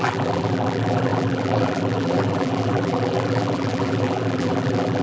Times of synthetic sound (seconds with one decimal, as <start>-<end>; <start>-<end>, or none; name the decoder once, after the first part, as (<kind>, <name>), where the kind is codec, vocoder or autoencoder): 0.0-5.0 (vocoder, BigVGAN v2)